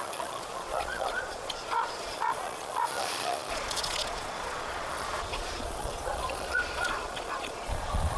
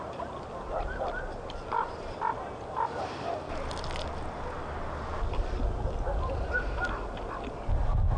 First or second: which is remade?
first